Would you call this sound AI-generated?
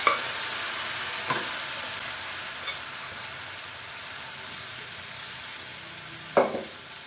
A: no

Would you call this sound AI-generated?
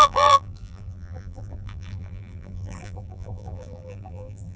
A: yes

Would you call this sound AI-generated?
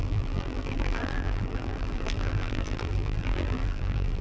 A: yes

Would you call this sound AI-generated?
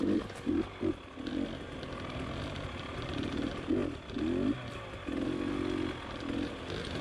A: no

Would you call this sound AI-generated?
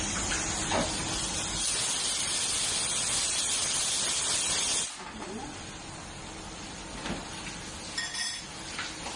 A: yes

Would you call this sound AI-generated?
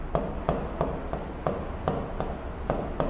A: no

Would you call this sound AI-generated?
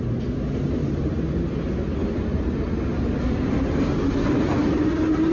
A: no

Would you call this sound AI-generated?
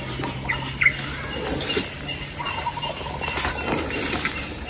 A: no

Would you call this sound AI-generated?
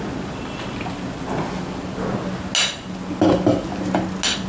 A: no